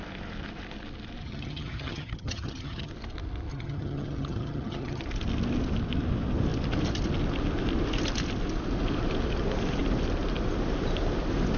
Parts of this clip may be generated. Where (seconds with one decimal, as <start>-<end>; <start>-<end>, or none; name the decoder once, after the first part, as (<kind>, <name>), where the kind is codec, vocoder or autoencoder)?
1.2-2.9 (vocoder, HiFi-GAN); 3.5-5.0